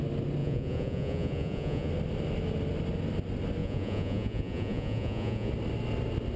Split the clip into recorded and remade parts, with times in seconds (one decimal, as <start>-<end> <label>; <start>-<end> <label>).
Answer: 0.0-0.4 recorded; 0.4-1.9 remade; 1.9-3.6 recorded; 3.6-5.5 remade; 5.5-6.4 recorded